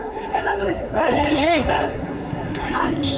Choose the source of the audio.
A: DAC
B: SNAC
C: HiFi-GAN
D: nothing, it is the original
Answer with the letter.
B